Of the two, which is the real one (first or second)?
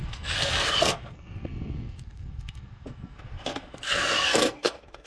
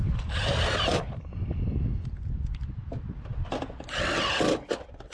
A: second